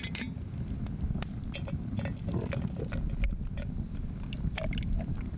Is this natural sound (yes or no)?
yes